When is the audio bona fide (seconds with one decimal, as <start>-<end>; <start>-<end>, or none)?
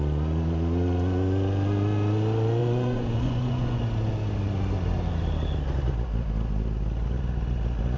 0.0-2.6; 3.8-8.0